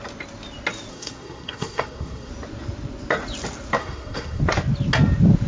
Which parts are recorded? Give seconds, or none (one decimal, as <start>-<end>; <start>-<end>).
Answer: 0.0-0.9; 2.3-3.8; 4.4-5.5